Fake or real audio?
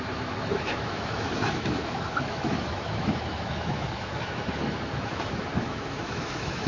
fake